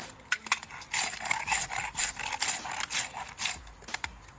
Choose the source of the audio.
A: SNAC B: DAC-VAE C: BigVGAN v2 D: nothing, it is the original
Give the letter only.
D